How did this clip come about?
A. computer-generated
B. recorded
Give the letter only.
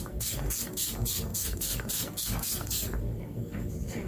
A